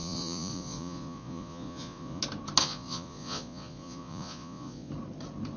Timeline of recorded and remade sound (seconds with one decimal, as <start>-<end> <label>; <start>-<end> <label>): 0.0-2.2 remade; 2.2-2.6 recorded; 2.6-4.9 remade; 4.9-5.6 recorded